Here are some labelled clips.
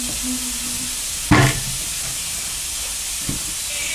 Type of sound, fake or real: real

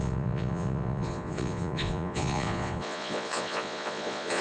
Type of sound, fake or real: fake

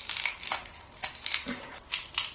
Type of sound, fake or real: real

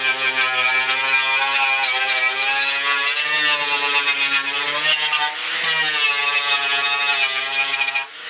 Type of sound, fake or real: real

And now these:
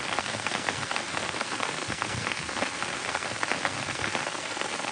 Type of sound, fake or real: fake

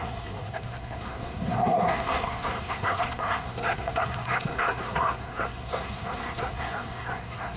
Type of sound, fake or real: fake